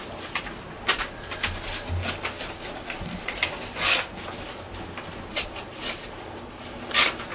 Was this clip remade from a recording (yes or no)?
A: no